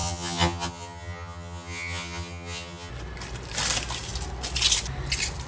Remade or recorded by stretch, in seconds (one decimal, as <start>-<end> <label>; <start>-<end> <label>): 0.0-2.9 remade; 2.9-5.5 recorded